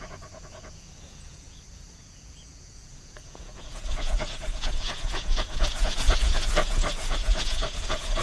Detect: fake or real fake